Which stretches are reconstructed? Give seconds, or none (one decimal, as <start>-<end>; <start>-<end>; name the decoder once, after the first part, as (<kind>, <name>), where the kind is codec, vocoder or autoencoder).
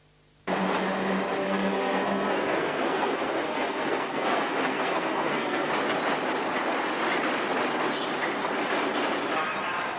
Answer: 1.4-5.7 (codec, SNAC)